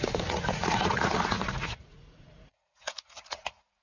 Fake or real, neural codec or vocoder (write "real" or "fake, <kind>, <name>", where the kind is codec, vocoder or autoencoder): fake, vocoder, Vocos